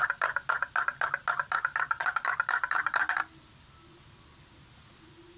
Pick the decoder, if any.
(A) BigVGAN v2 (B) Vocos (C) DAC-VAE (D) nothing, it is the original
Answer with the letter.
D